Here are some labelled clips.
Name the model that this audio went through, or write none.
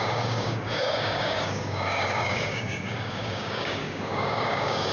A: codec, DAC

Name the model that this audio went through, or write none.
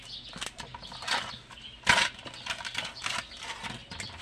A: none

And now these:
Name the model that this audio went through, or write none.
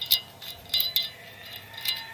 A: none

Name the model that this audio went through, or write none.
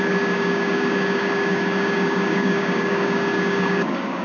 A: codec, DAC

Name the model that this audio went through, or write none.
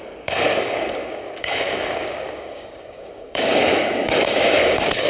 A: codec, DAC